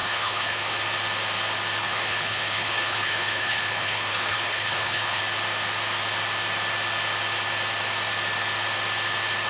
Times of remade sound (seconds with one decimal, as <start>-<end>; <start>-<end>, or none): 0.0-0.8; 1.8-5.2

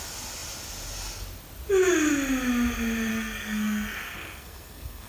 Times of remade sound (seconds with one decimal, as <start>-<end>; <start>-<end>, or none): 3.1-5.1

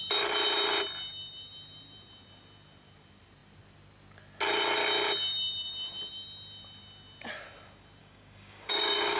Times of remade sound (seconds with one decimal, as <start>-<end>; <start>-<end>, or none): 8.0-9.2

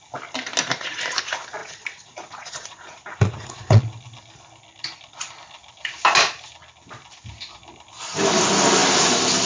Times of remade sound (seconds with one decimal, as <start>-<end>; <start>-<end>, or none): 1.6-3.8

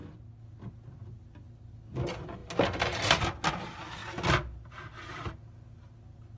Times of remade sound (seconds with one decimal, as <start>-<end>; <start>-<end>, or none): none